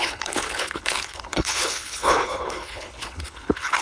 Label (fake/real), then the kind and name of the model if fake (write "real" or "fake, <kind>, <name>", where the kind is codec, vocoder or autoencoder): fake, codec, HILCodec